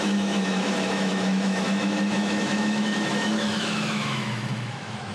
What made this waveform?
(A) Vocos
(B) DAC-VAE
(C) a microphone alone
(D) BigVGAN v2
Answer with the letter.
B